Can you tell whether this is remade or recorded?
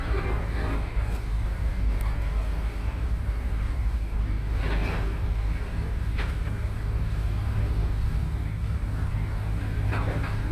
remade